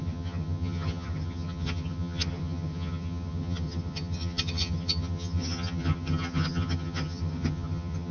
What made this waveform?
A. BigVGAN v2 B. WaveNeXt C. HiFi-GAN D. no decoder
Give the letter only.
C